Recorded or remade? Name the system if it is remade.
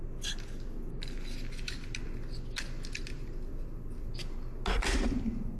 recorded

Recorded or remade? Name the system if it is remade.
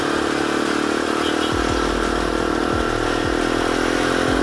recorded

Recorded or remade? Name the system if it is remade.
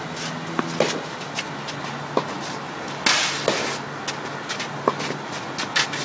recorded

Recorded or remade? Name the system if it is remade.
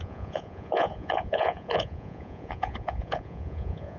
remade, vocoder, Vocos